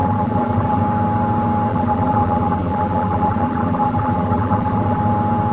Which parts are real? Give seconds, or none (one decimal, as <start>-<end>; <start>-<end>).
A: 0.8-1.7; 5.0-5.5